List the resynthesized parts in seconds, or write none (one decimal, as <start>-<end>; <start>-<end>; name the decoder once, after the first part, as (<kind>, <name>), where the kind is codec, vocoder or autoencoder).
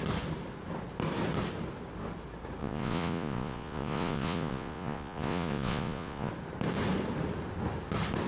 2.6-6.3 (vocoder, Vocos)